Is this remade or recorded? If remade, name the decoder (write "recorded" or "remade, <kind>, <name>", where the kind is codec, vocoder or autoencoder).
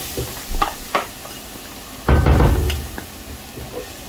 recorded